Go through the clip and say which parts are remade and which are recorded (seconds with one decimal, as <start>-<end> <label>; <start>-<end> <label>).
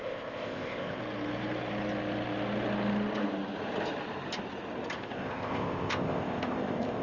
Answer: 0.0-1.0 remade; 1.0-5.0 recorded; 5.0-7.0 remade